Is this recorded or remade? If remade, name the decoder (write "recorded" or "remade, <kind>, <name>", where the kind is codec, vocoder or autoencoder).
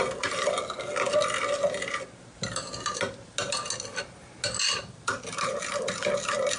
recorded